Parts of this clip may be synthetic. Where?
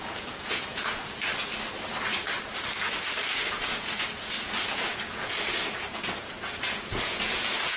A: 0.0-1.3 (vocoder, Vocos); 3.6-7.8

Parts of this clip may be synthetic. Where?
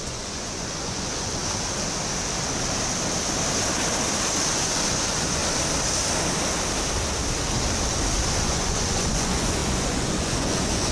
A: 0.0-1.4 (vocoder, Vocos); 4.5-5.4; 8.4-10.9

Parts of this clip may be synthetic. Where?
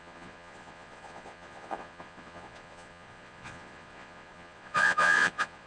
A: 0.0-5.7 (vocoder, Vocos)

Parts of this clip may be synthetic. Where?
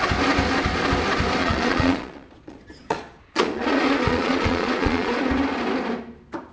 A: 1.4-5.3 (vocoder, Vocos)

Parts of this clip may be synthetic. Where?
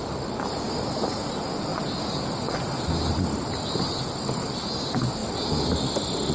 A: none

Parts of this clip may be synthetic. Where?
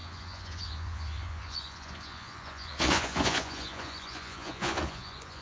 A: 0.0-5.4 (vocoder, Vocos)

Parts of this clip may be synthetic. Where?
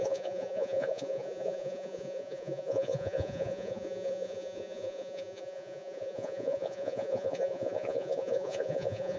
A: 0.0-9.2 (vocoder, Vocos)